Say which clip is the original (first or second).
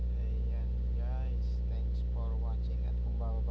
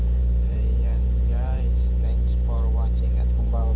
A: first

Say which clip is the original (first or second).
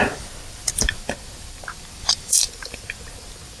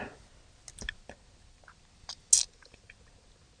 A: second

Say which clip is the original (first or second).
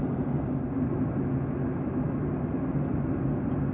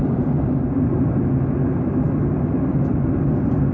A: first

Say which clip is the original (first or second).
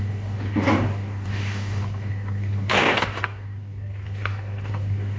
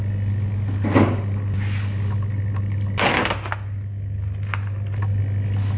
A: second